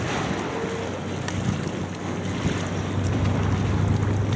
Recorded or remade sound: recorded